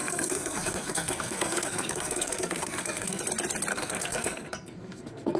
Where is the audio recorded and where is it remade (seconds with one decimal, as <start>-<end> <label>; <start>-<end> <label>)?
0.0-3.2 remade; 3.2-3.7 recorded; 3.7-5.4 remade